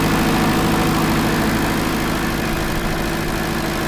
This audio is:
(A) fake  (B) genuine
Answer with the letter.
B